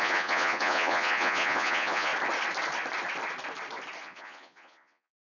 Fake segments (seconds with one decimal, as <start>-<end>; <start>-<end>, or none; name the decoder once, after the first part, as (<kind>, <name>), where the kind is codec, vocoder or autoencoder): 0.0-2.1 (vocoder, Vocos); 4.0-5.3